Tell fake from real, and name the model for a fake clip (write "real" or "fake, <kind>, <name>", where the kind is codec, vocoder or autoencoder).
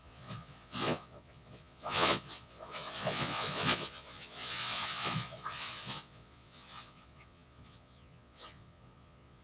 fake, vocoder, Vocos